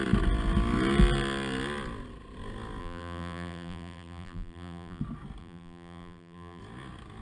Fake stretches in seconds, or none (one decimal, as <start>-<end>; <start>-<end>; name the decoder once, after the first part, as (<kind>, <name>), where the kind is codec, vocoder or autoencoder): 2.8-5.0 (vocoder, BigVGAN v2); 5.4-6.6